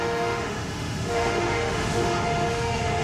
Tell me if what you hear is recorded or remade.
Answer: remade